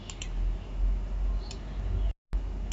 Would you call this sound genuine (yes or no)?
yes